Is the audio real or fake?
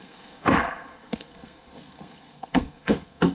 fake